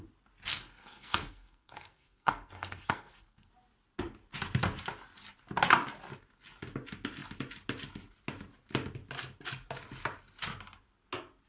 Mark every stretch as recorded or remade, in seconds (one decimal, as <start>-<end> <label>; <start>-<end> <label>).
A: 0.0-0.5 recorded; 0.5-3.5 remade; 3.5-11.5 recorded

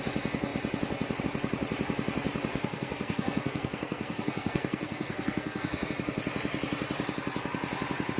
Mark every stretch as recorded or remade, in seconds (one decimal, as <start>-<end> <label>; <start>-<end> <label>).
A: 0.0-2.5 recorded; 2.5-5.9 remade; 5.9-8.2 recorded

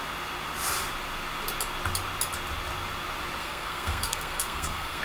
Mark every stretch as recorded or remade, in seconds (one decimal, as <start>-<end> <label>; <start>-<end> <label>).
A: 0.0-3.4 recorded; 3.4-5.0 remade

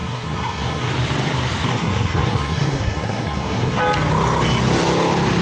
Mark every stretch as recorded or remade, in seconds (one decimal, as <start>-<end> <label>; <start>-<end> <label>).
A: 0.0-0.9 remade; 0.9-1.7 recorded; 1.7-3.8 remade; 3.8-5.4 recorded